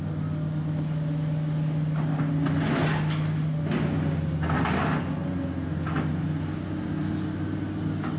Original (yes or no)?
yes